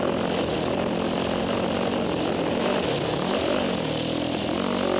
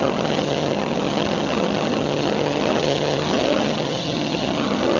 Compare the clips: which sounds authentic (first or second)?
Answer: first